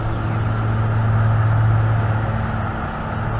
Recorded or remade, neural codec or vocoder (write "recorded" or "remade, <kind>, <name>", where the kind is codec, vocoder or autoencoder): recorded